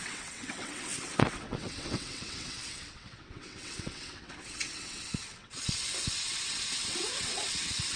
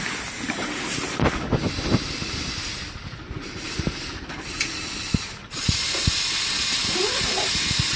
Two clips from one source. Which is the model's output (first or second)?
first